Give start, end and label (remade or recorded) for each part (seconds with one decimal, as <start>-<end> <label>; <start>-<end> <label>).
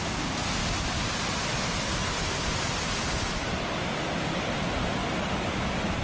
0.0-6.0 recorded